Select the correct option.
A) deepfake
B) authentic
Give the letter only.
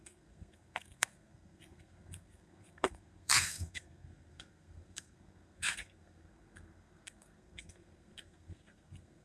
A